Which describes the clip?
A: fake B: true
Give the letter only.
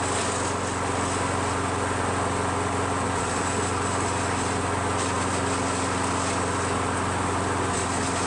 B